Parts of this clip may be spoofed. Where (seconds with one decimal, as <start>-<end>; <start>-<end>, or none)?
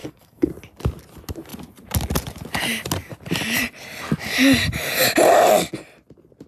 0.0-0.5